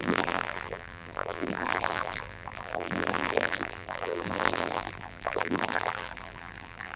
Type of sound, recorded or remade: remade